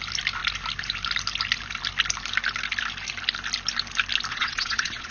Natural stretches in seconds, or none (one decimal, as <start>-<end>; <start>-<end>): 0.0-4.3